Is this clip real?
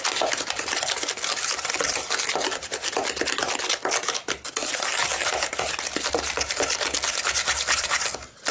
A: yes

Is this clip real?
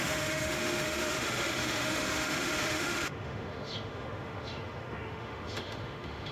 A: no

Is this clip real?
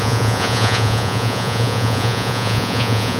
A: no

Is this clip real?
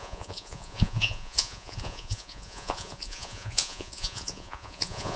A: no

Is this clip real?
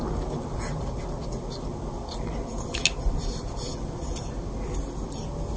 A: yes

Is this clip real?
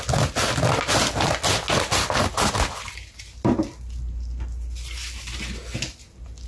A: yes